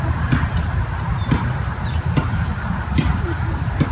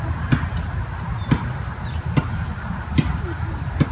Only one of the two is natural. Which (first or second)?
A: second